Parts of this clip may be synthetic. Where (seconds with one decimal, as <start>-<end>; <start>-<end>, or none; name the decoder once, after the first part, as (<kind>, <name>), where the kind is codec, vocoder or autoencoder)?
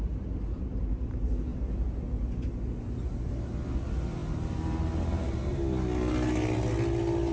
none